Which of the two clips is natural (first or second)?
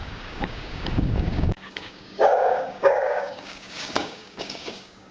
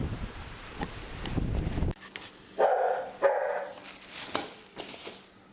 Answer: second